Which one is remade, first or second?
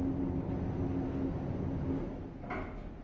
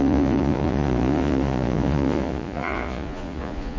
second